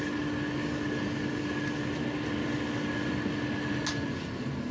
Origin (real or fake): real